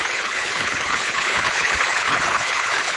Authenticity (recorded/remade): remade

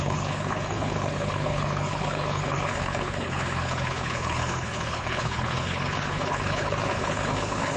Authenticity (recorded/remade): remade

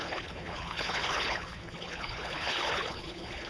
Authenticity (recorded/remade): remade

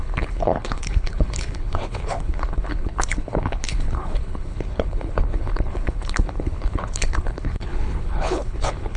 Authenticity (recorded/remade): remade